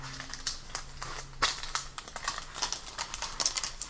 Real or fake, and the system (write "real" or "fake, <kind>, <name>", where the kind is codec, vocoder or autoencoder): real